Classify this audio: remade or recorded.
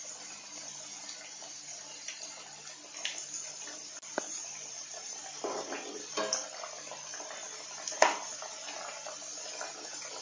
recorded